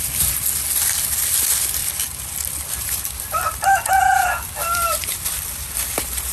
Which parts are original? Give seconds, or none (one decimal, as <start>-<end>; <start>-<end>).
0.0-1.8; 3.9-4.6